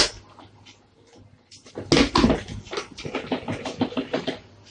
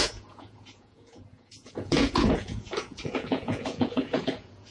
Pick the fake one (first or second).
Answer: second